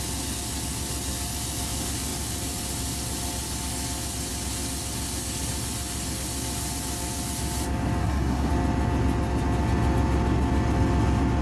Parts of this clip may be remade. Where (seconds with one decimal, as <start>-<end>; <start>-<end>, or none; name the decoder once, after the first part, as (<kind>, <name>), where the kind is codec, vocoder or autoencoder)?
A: 8.0-8.5 (codec, SNAC)